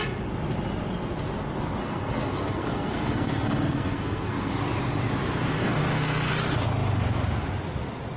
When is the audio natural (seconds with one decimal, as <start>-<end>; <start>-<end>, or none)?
0.0-1.8; 4.5-5.6; 6.3-8.2